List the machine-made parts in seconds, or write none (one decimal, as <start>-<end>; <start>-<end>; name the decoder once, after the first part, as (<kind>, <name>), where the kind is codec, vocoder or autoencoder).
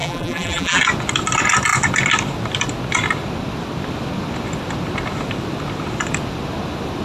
0.0-0.8 (vocoder, BigVGAN v2)